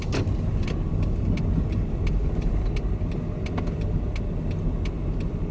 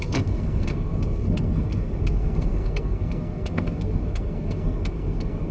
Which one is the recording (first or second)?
first